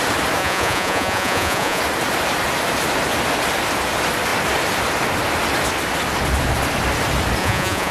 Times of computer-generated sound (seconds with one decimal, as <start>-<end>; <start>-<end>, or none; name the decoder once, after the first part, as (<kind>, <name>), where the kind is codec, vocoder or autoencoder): 0.4-1.8 (vocoder, Vocos); 7.4-7.9